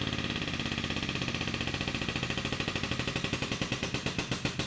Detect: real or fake real